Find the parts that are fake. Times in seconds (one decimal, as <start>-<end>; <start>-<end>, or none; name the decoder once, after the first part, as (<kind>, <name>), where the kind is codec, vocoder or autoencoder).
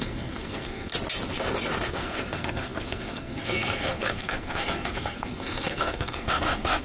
0.0-0.9 (codec, SNAC); 1.9-6.8